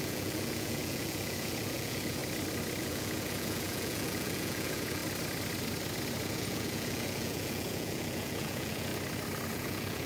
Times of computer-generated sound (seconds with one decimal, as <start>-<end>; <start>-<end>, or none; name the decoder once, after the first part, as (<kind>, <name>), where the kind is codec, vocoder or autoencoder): 0.0-2.2 (vocoder, Vocos); 2.8-5.0; 6.2-8.9; 9.5-10.1